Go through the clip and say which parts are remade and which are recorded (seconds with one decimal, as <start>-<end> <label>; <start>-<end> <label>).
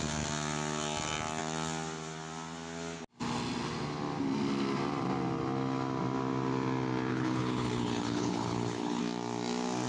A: 0.0-7.1 recorded; 7.1-9.0 remade; 9.0-9.9 recorded